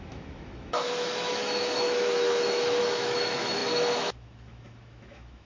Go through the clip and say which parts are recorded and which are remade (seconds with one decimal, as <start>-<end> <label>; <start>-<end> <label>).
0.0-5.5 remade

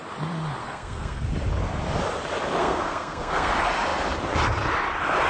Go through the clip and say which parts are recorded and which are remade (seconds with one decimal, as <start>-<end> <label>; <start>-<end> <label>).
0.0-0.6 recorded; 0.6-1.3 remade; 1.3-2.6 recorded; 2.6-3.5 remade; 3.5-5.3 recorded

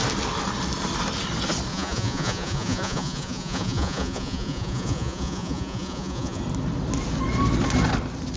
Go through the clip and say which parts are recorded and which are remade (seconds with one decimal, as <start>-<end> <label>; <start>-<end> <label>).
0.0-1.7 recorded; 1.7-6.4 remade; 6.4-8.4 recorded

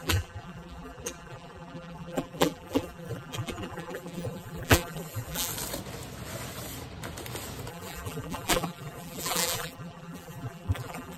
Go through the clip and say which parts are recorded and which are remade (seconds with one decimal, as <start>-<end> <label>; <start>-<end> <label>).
0.0-5.5 remade; 5.5-7.7 recorded; 7.7-11.2 remade